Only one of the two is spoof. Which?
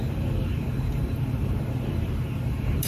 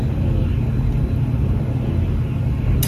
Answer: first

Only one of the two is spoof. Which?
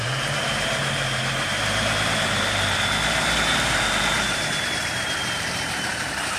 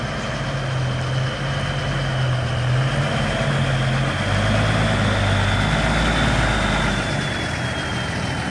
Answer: first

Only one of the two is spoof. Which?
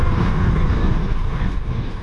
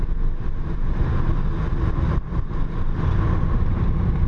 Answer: first